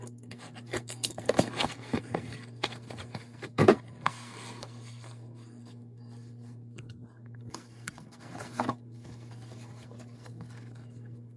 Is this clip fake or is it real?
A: fake